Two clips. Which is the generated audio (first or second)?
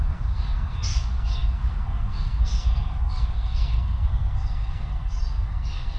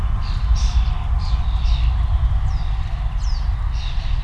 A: first